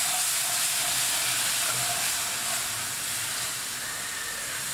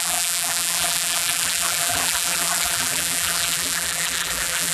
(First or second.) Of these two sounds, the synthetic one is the second